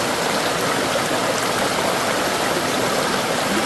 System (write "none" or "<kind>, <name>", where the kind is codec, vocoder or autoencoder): none